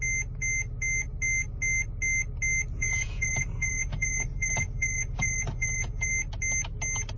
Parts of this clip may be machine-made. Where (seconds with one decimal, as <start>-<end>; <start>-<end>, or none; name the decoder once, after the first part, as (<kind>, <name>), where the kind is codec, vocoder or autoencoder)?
2.8-6.1 (vocoder, Vocos)